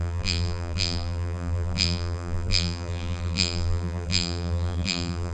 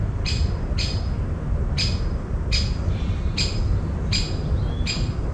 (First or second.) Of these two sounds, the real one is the second